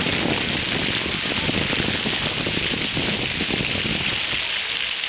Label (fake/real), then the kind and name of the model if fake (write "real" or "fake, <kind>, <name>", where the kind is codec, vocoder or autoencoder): real